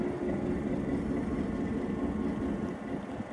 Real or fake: real